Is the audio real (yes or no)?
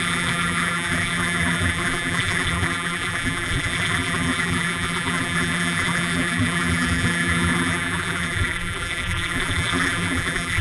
no